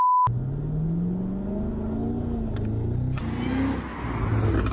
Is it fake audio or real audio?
real